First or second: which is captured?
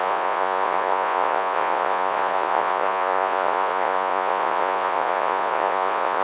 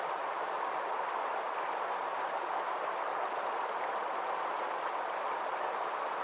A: second